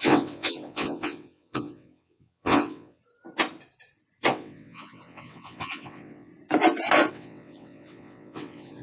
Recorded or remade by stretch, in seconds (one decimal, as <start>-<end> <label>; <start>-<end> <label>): 0.0-3.0 remade; 3.0-4.3 recorded; 4.3-6.3 remade; 6.3-7.1 recorded; 7.1-8.8 remade